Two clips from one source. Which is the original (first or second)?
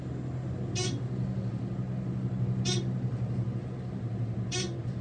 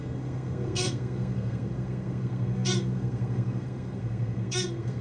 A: first